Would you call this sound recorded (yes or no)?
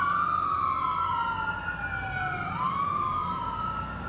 yes